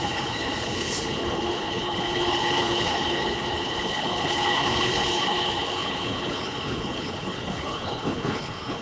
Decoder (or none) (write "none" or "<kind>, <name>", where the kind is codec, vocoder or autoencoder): codec, HILCodec